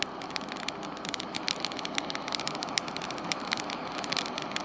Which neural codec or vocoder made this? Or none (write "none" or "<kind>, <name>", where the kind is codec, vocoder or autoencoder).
none